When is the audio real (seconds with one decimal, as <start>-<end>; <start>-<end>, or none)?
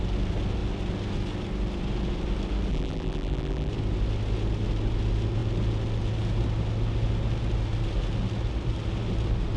0.0-2.7; 3.7-9.6